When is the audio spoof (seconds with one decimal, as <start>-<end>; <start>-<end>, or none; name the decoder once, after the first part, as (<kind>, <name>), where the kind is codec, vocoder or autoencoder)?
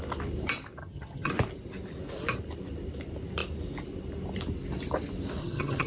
0.8-1.3 (vocoder, HiFi-GAN); 5.4-5.9